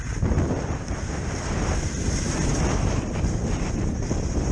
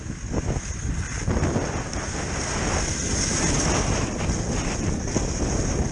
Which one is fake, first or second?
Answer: first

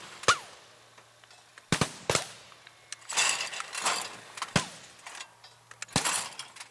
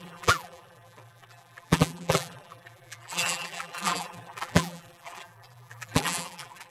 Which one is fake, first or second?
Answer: second